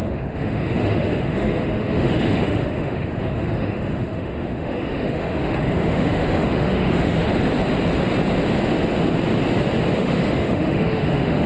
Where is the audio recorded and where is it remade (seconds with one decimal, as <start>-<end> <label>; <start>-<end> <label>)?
0.0-7.3 remade; 7.3-9.9 recorded; 9.9-11.5 remade